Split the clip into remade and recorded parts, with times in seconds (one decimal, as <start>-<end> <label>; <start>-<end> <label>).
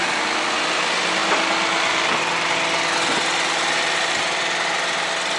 0.0-5.4 recorded